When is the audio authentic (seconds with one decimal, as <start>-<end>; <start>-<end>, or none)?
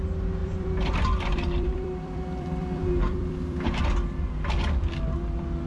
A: 0.0-0.4; 3.8-5.7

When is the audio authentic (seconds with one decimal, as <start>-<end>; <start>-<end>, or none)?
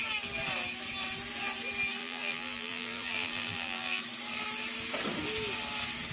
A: 0.0-2.0; 4.0-6.1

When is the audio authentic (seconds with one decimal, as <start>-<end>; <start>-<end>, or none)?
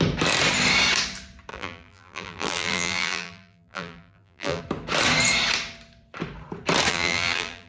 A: 0.0-1.5; 4.6-6.9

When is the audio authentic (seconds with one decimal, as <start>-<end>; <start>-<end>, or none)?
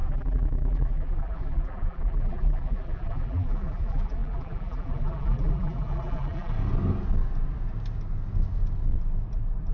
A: 6.5-9.7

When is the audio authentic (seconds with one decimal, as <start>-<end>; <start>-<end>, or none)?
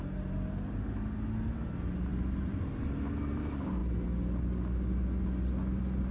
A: 0.0-3.8; 4.4-6.1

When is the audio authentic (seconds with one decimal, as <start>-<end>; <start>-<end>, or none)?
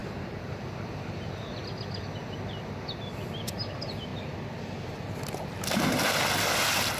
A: 0.0-7.0